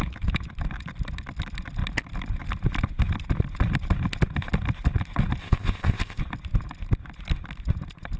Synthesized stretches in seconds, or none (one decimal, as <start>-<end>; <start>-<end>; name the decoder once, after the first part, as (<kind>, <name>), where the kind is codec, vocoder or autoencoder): 5.4-6.2 (codec, ZipCodec)